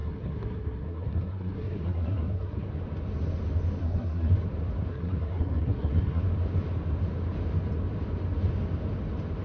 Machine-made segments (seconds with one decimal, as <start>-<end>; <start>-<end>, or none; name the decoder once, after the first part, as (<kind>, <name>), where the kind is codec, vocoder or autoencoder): 0.0-2.7 (codec, SNAC); 3.8-4.3; 4.9-6.2

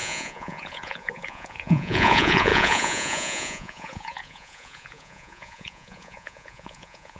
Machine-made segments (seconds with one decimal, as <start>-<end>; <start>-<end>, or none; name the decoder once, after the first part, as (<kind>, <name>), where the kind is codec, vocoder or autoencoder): 0.0-7.2 (vocoder, Vocos)

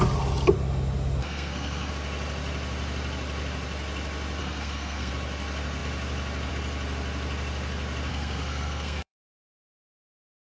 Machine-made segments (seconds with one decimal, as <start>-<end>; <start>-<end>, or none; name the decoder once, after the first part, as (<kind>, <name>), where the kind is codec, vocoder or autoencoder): 1.2-1.9 (codec, SNAC); 4.4-5.1; 8.1-10.1

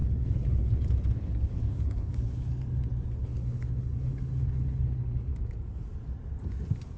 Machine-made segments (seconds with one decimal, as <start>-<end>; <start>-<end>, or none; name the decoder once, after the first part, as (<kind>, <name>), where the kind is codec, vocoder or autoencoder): 0.0-2.5 (codec, HILCodec); 3.2-5.3